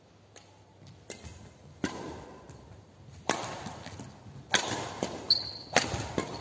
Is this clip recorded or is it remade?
recorded